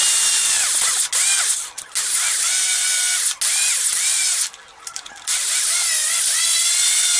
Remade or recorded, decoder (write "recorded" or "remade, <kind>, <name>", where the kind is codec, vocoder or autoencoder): recorded